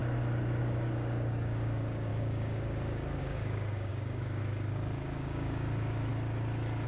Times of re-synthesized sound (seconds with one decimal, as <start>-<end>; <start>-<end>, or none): 0.6-6.1